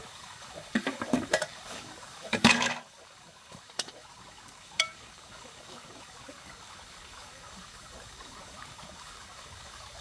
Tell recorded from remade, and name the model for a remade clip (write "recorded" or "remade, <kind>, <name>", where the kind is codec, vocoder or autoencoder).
remade, codec, DAC